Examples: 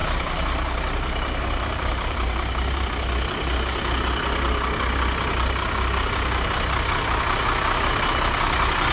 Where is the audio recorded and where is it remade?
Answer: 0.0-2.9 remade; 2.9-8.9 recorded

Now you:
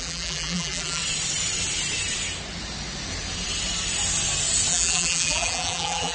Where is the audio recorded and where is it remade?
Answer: 0.0-1.0 remade; 1.0-4.7 recorded; 4.7-6.1 remade

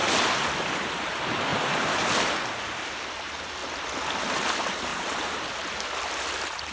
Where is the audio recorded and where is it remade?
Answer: 0.0-1.5 recorded; 1.5-2.1 remade; 2.1-4.9 recorded; 4.9-5.5 remade; 5.5-6.7 recorded